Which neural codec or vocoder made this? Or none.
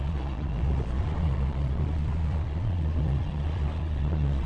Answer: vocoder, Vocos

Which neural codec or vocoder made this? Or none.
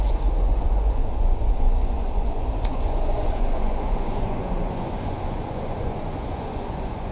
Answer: vocoder, Vocos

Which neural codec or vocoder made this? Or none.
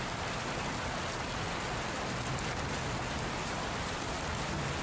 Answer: none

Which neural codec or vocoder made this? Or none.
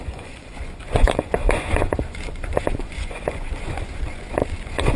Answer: vocoder, Vocos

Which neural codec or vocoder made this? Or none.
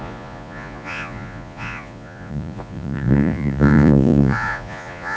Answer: vocoder, Vocos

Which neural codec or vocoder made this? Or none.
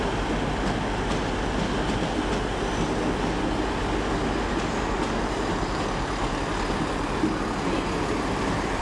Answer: none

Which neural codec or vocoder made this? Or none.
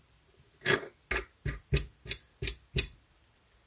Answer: none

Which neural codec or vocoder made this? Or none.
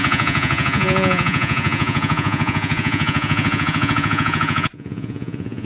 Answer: vocoder, Vocos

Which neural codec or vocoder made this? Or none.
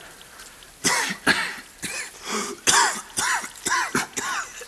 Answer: none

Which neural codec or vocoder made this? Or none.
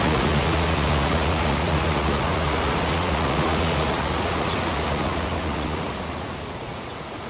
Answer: vocoder, Vocos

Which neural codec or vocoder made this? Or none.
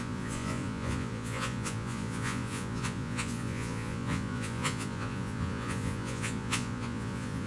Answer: vocoder, Vocos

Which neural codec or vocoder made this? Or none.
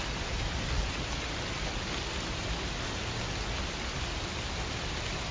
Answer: none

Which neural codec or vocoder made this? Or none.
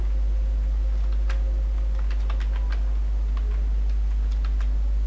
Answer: none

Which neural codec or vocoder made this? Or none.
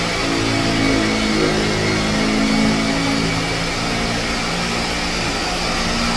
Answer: none